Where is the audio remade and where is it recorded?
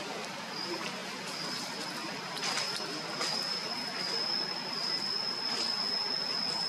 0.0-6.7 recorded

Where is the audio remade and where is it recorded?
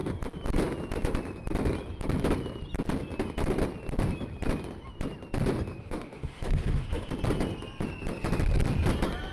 0.0-5.8 recorded; 5.8-7.1 remade; 7.1-9.3 recorded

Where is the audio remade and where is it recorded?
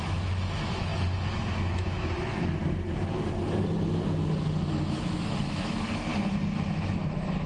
0.0-2.6 remade; 2.6-5.0 recorded; 5.0-6.1 remade; 6.1-6.7 recorded; 6.7-7.5 remade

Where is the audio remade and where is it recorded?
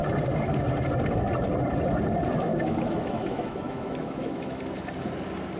0.0-2.5 recorded; 2.5-4.6 remade; 4.6-5.6 recorded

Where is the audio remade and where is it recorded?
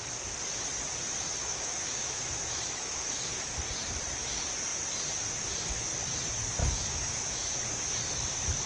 0.0-1.4 recorded; 1.4-3.4 remade; 3.4-6.6 recorded; 6.6-7.6 remade; 7.6-8.7 recorded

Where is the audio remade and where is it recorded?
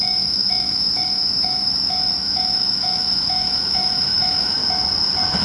0.0-4.6 remade; 4.6-5.4 recorded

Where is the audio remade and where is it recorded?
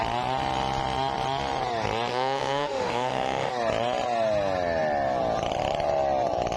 0.0-2.1 recorded; 2.1-3.5 remade; 3.5-6.6 recorded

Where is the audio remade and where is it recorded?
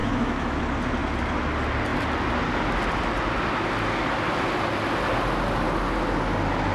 0.0-0.6 remade; 0.6-6.7 recorded